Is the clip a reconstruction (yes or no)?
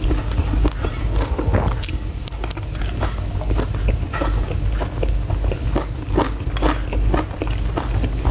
no